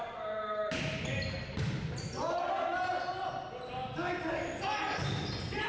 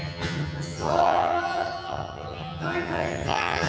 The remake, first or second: second